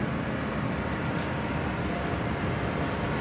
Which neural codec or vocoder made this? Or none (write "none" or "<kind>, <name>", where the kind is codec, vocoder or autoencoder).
none